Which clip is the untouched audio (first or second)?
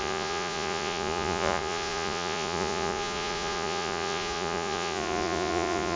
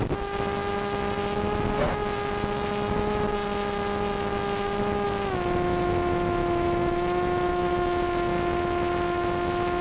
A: second